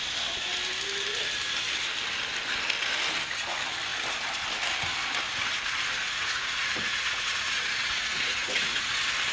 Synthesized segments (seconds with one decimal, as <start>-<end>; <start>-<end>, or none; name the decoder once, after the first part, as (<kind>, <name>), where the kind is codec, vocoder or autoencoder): 6.0-8.9 (vocoder, Vocos)

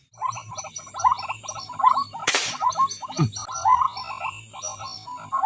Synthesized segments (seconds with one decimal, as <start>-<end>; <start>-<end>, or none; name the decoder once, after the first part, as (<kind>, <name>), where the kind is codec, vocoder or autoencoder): 2.2-2.7 (vocoder, Vocos)

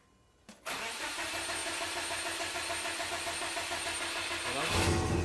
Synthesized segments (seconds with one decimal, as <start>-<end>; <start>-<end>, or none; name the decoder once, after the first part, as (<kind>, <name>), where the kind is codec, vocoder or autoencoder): none